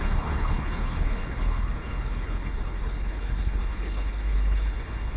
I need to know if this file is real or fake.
fake